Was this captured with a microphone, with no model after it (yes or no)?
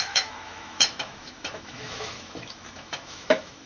no